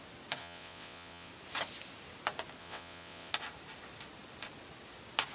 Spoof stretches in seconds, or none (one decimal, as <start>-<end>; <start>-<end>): 0.4-1.3; 2.6-3.3